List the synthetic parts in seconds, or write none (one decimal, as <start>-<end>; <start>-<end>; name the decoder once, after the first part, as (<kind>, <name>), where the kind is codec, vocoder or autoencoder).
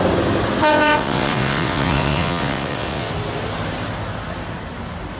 0.7-3.1 (vocoder, WaveNeXt)